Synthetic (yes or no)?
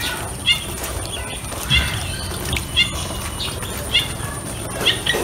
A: yes